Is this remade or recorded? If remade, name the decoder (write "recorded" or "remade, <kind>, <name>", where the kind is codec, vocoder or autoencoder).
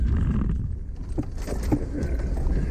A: recorded